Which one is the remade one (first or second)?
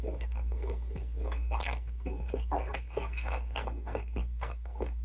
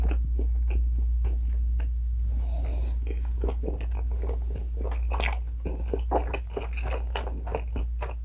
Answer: first